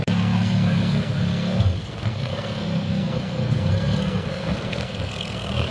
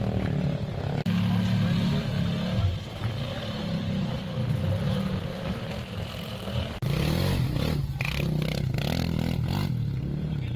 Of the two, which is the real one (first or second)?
second